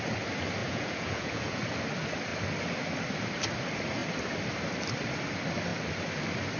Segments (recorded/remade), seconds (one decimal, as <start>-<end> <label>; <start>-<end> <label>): 0.0-0.6 recorded; 0.6-1.6 remade; 1.6-6.6 recorded